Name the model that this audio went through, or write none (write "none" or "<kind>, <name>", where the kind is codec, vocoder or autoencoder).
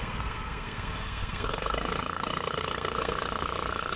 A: codec, SNAC